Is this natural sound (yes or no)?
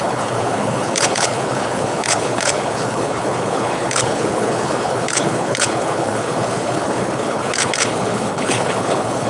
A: no